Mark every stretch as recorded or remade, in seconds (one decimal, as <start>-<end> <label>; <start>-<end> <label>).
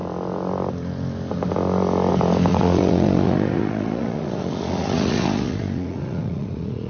0.0-2.5 recorded; 2.5-6.9 remade